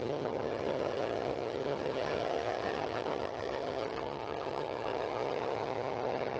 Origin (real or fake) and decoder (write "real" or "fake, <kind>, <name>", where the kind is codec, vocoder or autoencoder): fake, vocoder, HiFi-GAN